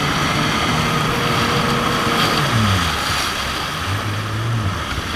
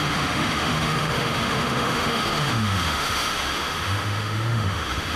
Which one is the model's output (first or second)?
second